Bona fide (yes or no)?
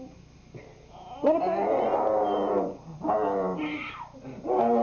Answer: yes